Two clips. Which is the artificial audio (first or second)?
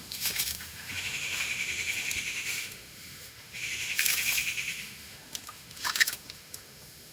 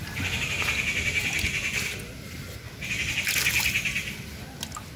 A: first